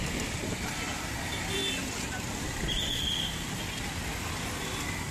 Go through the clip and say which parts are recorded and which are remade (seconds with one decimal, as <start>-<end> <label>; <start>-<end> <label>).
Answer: 0.0-5.1 recorded